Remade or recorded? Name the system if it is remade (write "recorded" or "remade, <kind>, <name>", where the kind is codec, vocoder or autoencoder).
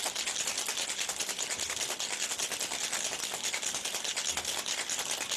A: recorded